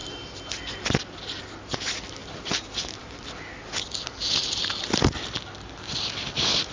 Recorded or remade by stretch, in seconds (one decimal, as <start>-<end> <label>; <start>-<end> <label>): 0.0-6.7 recorded